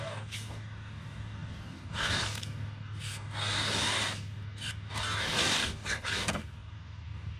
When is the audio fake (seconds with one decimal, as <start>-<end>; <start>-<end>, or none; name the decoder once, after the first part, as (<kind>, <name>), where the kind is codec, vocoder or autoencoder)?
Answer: 0.0-7.4 (codec, DAC)